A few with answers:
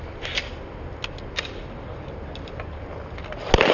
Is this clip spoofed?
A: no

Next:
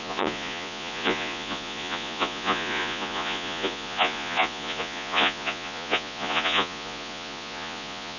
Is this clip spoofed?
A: yes